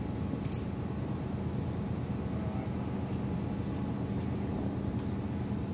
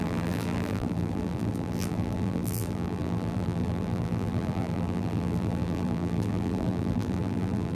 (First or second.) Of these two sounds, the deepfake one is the second